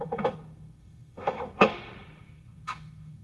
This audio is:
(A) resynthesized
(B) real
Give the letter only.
A